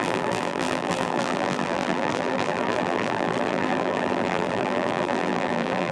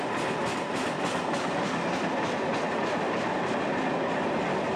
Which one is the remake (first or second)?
first